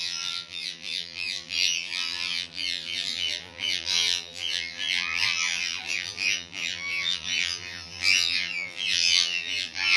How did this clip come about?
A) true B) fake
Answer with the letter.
B